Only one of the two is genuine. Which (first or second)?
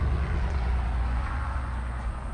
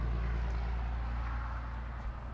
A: second